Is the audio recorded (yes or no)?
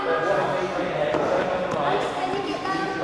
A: yes